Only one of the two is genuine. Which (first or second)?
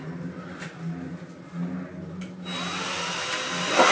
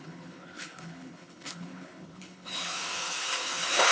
first